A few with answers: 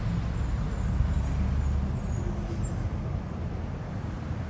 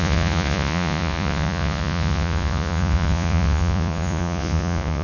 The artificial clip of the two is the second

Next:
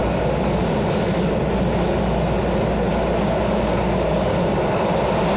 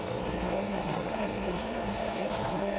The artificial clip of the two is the second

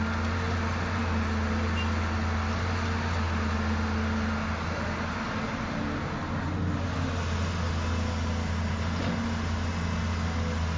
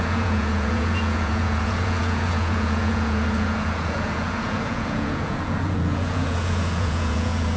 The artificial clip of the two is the second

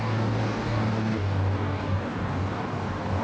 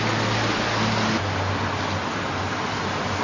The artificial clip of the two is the first